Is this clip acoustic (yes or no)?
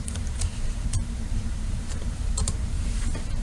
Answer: no